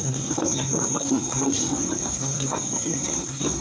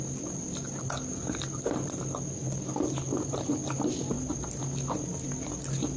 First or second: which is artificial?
first